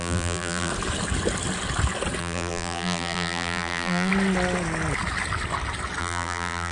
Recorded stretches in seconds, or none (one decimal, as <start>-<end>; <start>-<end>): 0.7-2.2; 4.1-6.0